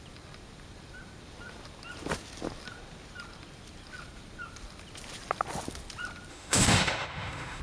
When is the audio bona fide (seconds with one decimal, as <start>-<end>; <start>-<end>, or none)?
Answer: 0.0-6.3